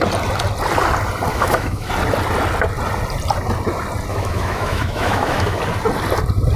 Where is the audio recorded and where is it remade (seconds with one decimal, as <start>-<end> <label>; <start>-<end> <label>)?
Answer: 0.0-1.3 recorded; 1.3-1.9 remade; 1.9-4.1 recorded; 4.1-5.6 remade; 5.6-6.6 recorded